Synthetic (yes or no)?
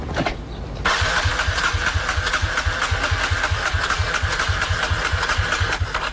no